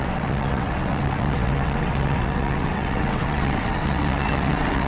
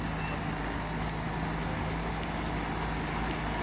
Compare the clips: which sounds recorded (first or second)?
second